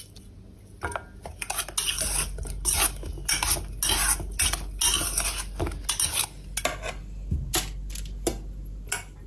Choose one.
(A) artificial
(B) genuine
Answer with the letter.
B